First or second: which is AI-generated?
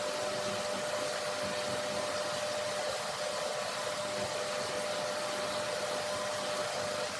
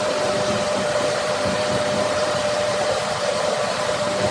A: second